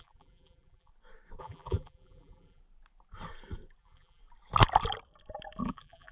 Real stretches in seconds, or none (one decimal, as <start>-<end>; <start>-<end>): 0.9-1.4; 2.6-3.8; 4.2-5.6